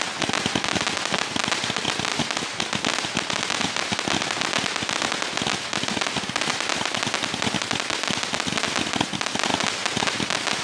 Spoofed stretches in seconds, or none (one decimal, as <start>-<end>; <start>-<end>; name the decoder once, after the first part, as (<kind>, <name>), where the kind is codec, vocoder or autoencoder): none

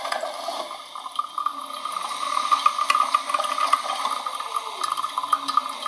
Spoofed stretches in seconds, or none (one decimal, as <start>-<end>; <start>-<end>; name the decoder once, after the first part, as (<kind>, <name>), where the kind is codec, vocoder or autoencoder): none

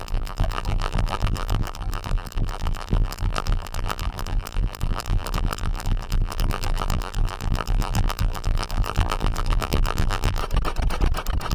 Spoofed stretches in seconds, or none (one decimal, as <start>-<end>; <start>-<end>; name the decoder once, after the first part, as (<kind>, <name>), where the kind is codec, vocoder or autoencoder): 0.0-10.4 (vocoder, BigVGAN v2)

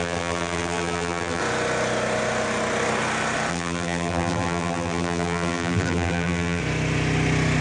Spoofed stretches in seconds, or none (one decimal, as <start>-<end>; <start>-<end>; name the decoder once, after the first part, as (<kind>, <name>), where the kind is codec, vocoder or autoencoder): 0.0-1.4 (vocoder, BigVGAN v2); 3.5-6.6

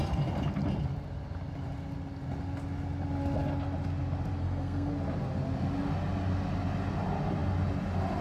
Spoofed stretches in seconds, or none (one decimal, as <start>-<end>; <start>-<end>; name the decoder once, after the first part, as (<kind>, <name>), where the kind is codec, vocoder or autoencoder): 4.4-4.9 (codec, SNAC)

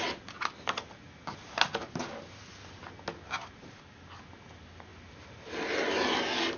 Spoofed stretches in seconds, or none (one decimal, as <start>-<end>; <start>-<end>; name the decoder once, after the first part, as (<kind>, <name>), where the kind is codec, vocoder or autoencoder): 4.9-5.7 (vocoder, BigVGAN v2)

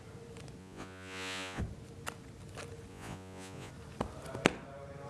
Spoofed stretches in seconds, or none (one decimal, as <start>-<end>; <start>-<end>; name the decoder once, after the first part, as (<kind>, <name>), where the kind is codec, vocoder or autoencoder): 0.6-1.6 (vocoder, Vocos); 2.9-3.7

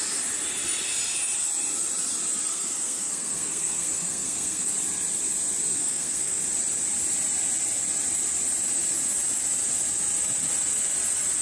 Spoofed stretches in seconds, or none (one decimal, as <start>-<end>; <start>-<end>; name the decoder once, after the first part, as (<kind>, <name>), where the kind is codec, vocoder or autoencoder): 2.5-4.7 (codec, SNAC); 5.7-6.4